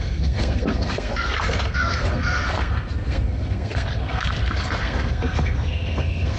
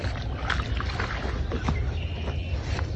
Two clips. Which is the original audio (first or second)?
second